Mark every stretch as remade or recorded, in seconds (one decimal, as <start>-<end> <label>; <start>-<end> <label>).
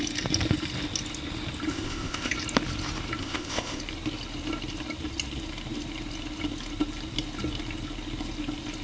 0.0-1.7 recorded; 1.7-2.3 remade; 2.3-3.2 recorded; 3.2-3.8 remade; 3.8-8.8 recorded